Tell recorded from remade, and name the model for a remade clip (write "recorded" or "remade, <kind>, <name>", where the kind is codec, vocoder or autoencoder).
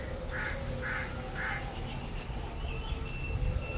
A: recorded